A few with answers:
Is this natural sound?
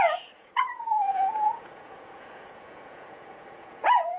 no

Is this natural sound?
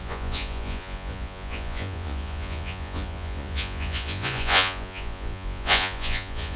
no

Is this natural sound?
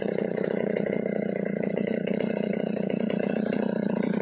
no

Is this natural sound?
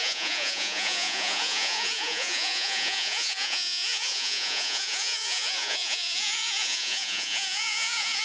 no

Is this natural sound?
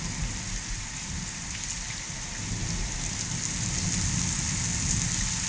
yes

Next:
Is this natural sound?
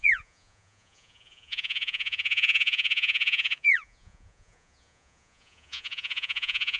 no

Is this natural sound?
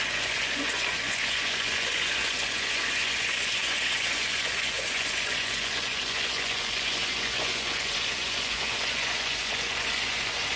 no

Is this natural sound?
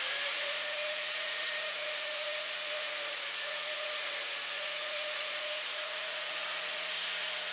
no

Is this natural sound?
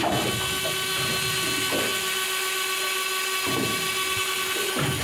yes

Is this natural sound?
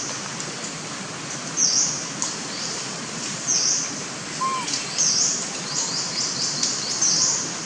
yes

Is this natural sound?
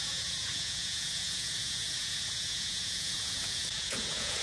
no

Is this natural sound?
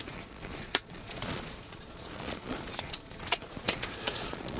no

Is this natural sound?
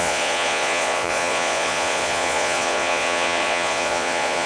no